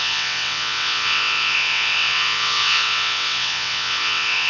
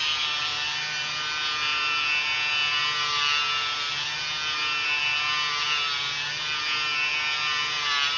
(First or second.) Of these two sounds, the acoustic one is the second